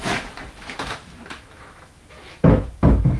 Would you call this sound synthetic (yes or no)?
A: yes